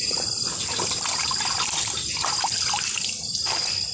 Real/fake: real